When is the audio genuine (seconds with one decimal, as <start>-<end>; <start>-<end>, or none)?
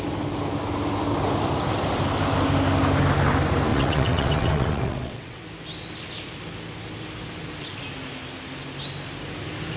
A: 0.0-3.7; 5.4-9.8